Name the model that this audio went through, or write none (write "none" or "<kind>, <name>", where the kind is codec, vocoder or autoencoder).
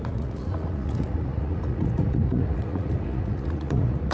vocoder, Vocos